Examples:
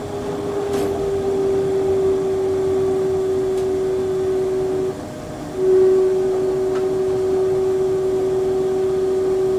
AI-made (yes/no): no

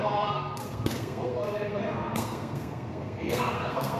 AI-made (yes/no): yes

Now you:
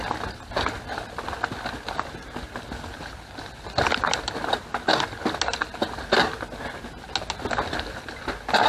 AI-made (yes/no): no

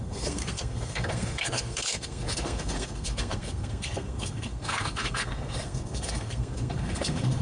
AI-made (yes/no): yes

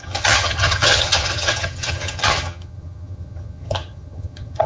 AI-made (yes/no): yes